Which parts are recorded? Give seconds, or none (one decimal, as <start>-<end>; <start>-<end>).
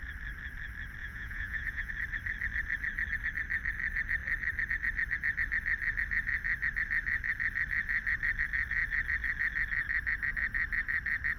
0.0-1.0; 1.9-11.4